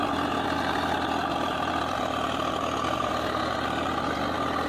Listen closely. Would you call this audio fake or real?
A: real